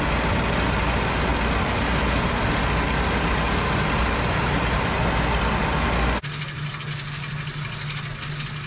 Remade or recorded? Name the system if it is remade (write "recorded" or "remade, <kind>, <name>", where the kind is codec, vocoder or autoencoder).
recorded